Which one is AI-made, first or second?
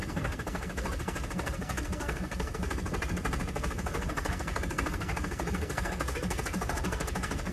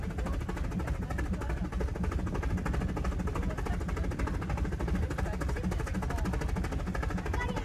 first